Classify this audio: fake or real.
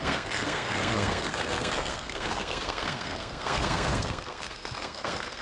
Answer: fake